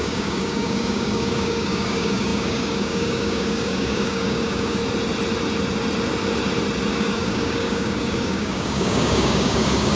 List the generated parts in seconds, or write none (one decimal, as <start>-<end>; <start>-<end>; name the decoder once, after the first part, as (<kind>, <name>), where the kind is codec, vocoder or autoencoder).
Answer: 0.0-4.8 (codec, DAC); 6.9-10.0